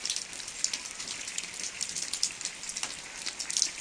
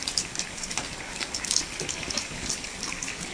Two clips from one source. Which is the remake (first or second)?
second